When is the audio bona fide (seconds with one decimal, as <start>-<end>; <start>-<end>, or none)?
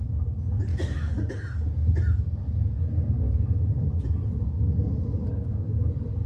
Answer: 0.0-0.7; 1.3-6.3